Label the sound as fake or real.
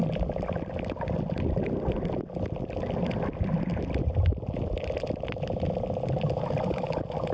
real